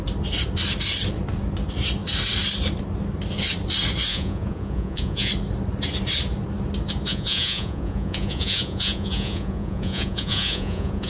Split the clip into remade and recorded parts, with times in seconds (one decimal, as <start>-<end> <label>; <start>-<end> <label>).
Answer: 0.0-4.1 recorded; 4.1-5.3 remade; 5.3-7.1 recorded; 7.1-11.1 remade